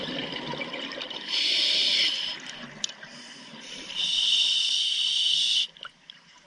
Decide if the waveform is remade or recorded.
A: recorded